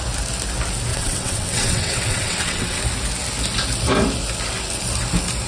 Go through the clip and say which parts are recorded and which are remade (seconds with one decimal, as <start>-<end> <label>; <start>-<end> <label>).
0.0-0.9 recorded; 0.9-2.8 remade; 2.8-5.5 recorded

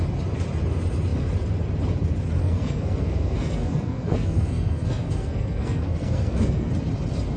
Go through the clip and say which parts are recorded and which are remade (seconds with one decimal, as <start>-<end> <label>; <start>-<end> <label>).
0.0-2.4 recorded; 2.4-6.7 remade; 6.7-7.4 recorded

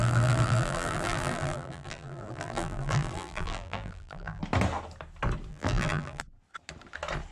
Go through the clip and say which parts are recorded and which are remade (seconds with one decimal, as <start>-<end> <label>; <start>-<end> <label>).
0.0-4.4 remade; 4.4-5.5 recorded; 5.5-6.2 remade; 6.2-7.3 recorded